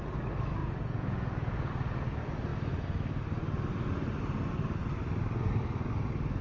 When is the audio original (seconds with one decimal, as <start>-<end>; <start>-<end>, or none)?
0.0-0.6; 1.5-6.4